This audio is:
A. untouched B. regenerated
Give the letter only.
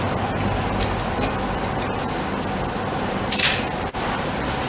B